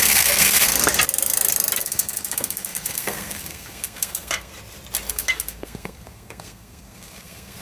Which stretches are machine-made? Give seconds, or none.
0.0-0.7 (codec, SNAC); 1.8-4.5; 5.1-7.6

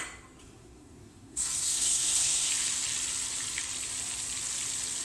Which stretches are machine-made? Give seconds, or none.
0.4-2.5 (codec, SNAC)

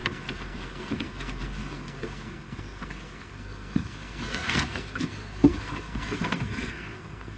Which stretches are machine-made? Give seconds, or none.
0.0-7.4 (codec, SNAC)